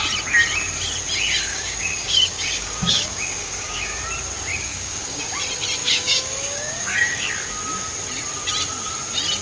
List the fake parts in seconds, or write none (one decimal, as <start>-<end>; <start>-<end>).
1.5-4.0; 4.5-5.2; 5.8-7.3